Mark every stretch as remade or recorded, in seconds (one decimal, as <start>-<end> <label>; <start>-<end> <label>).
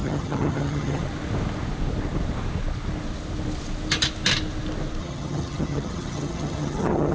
0.0-1.0 remade; 1.0-5.0 recorded; 5.0-7.1 remade